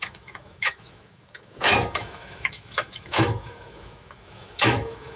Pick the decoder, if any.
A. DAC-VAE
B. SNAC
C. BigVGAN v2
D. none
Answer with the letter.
A